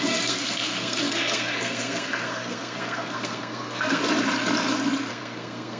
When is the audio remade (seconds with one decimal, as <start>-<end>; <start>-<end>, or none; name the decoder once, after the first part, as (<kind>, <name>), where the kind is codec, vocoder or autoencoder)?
0.0-4.0 (codec, SNAC); 5.1-5.8